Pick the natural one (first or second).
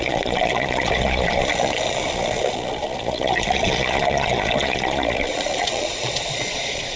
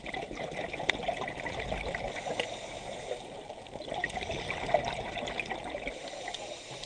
second